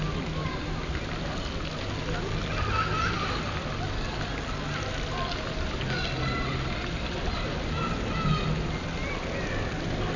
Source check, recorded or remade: recorded